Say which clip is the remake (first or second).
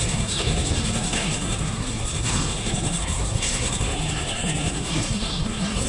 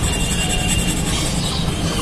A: first